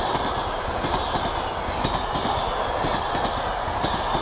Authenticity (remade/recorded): recorded